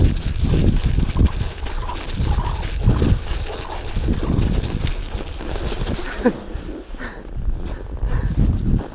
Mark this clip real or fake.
real